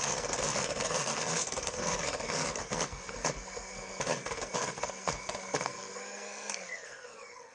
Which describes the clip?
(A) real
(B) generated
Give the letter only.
B